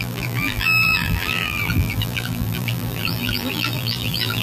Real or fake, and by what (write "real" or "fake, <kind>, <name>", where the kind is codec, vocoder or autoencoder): fake, vocoder, BigVGAN v2